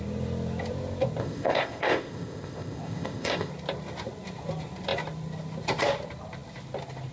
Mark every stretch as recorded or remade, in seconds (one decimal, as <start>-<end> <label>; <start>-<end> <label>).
0.0-1.2 recorded; 1.2-3.5 remade; 3.5-7.1 recorded